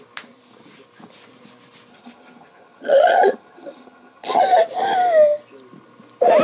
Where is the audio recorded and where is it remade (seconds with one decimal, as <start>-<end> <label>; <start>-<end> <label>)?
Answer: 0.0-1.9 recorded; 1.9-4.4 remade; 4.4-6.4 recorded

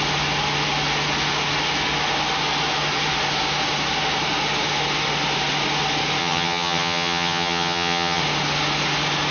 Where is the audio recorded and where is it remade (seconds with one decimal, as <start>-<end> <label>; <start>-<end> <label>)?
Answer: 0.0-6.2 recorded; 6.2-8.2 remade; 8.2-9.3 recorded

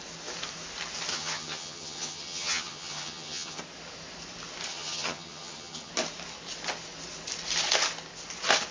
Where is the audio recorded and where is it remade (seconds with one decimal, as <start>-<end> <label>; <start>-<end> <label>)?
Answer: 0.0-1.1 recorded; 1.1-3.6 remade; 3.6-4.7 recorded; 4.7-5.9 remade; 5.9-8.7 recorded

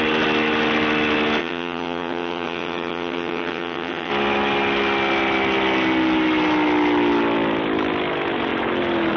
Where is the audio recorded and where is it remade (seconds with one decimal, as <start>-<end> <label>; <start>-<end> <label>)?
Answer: 0.0-1.4 recorded; 1.4-4.1 remade; 4.1-9.2 recorded